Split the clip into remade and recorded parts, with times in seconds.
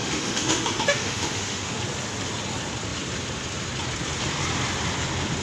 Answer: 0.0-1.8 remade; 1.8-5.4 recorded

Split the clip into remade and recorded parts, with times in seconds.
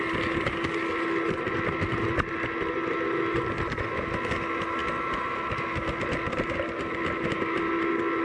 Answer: 0.0-8.2 recorded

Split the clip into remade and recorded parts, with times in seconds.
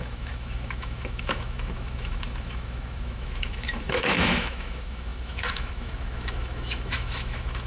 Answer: 0.0-7.7 remade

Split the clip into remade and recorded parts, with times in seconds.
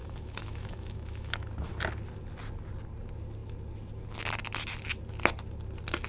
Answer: 0.0-1.5 remade; 1.5-6.1 recorded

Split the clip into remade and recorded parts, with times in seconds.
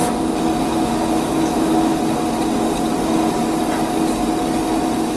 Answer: 0.0-0.6 recorded; 0.6-1.9 remade; 1.9-5.2 recorded